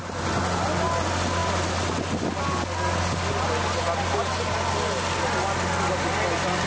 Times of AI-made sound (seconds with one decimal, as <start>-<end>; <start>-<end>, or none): none